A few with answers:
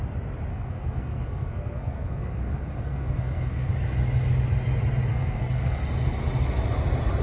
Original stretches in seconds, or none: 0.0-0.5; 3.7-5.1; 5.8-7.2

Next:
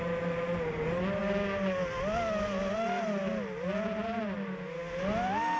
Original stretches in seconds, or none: 0.0-5.6

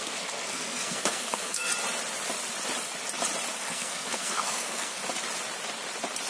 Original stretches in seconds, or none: 1.7-3.6; 5.0-6.3